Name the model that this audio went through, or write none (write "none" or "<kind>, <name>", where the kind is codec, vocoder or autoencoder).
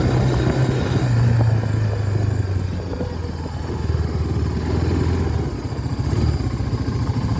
none